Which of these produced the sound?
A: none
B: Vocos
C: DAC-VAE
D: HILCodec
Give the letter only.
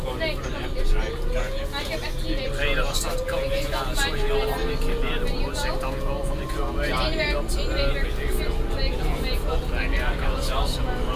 A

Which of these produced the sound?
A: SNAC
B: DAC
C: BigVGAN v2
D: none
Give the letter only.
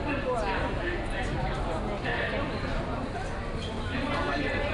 D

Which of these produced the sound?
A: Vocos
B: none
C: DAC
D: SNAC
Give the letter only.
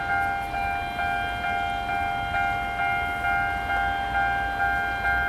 B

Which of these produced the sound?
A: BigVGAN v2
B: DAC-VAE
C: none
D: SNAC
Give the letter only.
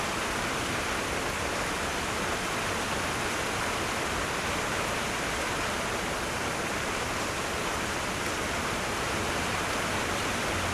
C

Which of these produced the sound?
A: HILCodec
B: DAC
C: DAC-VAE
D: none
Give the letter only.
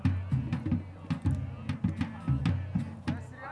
D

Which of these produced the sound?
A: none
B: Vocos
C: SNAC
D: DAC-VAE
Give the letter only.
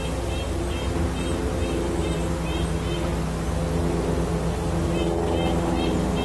A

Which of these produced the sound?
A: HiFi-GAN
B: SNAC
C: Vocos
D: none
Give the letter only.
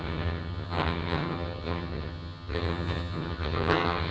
A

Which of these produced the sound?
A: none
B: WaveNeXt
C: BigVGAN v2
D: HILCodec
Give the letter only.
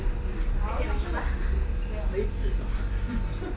A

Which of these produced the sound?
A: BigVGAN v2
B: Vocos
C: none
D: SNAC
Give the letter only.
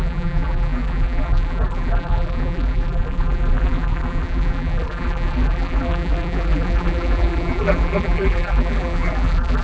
A